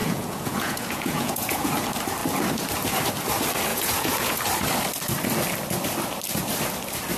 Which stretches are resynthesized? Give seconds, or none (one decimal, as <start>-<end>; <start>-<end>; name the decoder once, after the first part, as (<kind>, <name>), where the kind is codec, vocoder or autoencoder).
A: 0.0-1.7 (vocoder, Vocos); 3.7-4.4